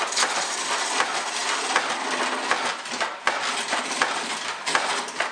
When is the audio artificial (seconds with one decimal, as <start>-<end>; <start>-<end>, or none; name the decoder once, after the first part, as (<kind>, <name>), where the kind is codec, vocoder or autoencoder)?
none